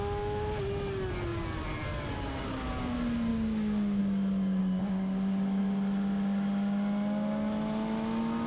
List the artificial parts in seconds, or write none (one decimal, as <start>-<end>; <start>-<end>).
3.3-4.0; 4.6-5.6